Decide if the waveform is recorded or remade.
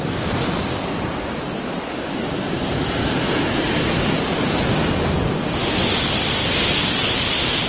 recorded